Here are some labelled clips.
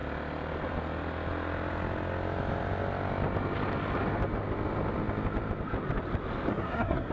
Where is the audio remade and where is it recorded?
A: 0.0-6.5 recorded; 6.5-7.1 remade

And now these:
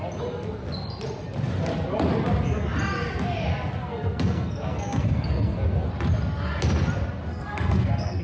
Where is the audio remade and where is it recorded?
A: 0.0-3.8 recorded; 3.8-5.9 remade; 5.9-7.2 recorded; 7.2-8.2 remade

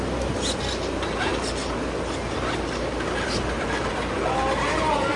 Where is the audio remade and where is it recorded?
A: 0.0-5.2 recorded

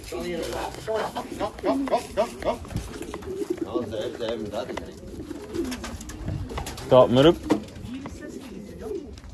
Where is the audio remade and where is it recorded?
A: 0.0-0.4 recorded; 0.4-1.2 remade; 1.2-9.3 recorded

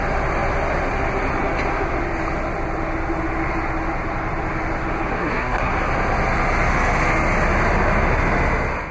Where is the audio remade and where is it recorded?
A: 0.0-5.1 recorded; 5.1-5.7 remade; 5.7-8.9 recorded